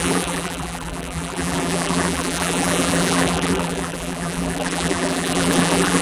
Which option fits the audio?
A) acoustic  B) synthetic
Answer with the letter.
B